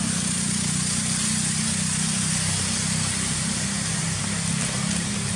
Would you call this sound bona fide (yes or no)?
yes